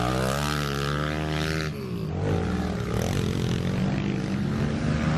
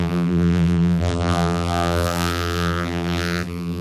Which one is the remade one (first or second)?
second